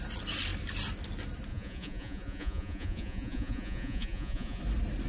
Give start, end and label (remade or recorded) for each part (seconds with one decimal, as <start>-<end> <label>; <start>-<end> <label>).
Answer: 0.0-1.5 recorded; 1.5-4.6 remade; 4.6-5.1 recorded